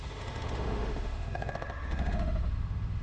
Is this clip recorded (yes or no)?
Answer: no